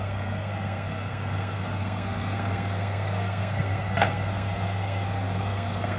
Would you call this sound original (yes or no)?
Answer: no